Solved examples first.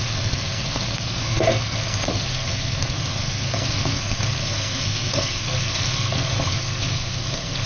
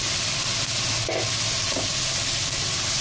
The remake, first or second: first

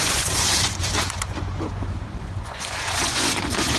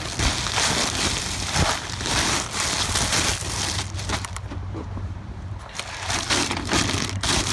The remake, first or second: first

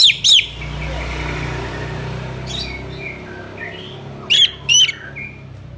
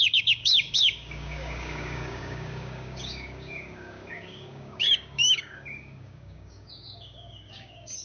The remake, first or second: second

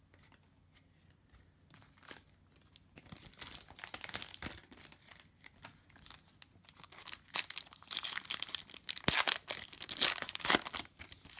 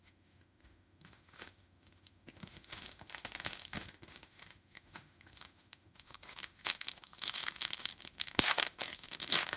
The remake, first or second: second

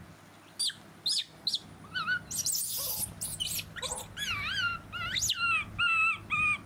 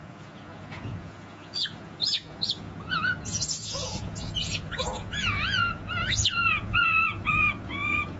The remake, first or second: second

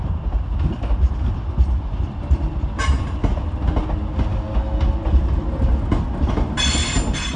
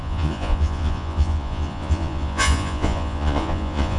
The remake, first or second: second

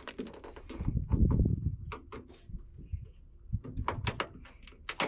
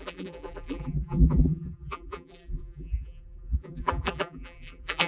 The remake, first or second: second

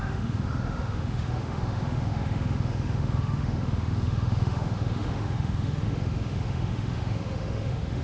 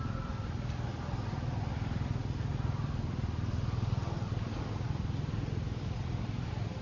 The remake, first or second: first